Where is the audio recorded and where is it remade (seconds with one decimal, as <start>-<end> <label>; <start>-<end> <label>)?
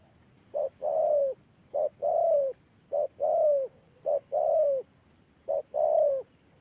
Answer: 0.0-6.6 recorded